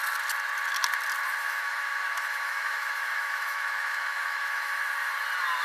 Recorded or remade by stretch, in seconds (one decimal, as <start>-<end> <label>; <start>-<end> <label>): 0.0-1.4 recorded; 1.4-4.8 remade; 4.8-5.6 recorded